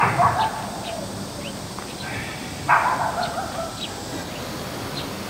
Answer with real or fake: real